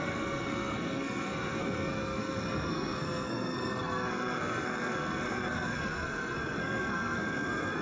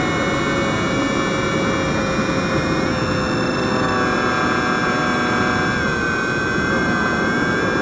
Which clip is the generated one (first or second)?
first